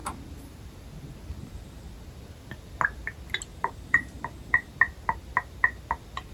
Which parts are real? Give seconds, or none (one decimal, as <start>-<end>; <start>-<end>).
0.0-1.4; 1.9-3.5; 4.7-6.3